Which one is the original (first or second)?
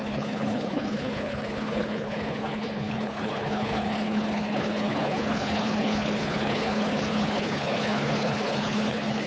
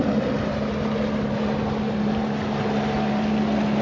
second